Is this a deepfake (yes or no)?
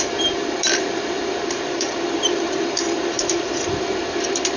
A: yes